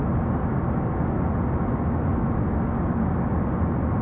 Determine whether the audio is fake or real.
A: real